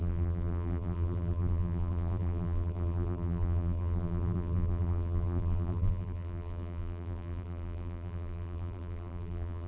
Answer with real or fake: fake